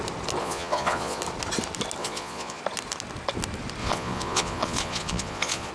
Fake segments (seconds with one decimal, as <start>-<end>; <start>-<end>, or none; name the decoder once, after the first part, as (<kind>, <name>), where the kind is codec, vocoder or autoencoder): 0.4-1.2 (vocoder, Vocos); 2.0-2.6; 3.8-5.7